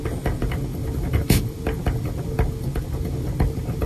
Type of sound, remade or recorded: recorded